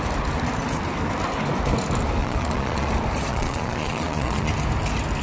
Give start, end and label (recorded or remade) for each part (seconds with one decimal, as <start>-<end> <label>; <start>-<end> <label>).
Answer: 0.0-2.2 recorded; 2.2-2.9 remade; 2.9-3.3 recorded; 3.3-4.5 remade; 4.5-5.2 recorded